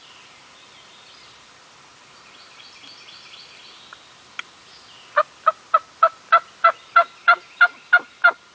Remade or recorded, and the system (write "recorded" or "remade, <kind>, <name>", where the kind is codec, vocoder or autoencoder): recorded